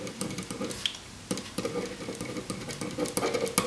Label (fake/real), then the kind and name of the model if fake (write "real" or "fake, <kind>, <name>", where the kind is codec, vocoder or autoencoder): real